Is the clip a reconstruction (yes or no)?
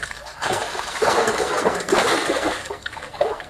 yes